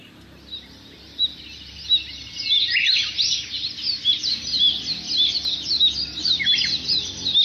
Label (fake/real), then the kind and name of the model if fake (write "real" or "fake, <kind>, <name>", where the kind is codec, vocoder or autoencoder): real